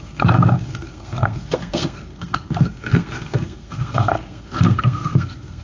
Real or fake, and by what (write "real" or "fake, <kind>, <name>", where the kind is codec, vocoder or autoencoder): fake, codec, SNAC